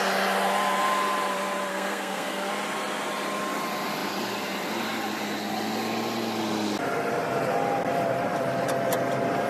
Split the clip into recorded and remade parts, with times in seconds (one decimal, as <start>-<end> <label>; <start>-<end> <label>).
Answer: 0.0-1.7 recorded; 1.7-2.5 remade; 2.5-9.5 recorded